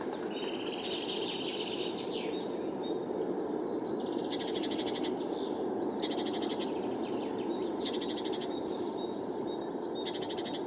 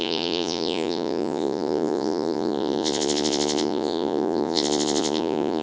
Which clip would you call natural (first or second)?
first